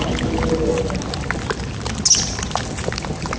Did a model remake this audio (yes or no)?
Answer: no